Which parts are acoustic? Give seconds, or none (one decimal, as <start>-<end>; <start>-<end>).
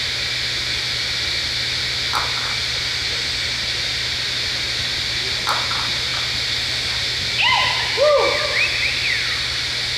0.0-10.0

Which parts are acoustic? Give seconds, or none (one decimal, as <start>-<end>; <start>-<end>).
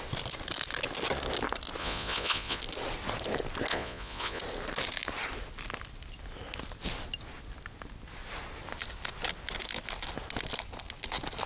0.0-1.8; 2.6-3.7; 4.4-11.5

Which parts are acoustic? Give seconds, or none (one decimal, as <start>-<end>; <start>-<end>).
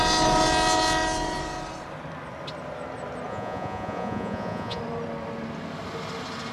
0.0-3.3; 4.8-6.5